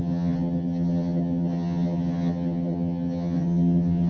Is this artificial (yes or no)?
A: yes